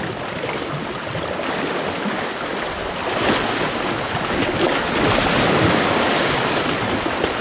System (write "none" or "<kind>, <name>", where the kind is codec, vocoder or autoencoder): none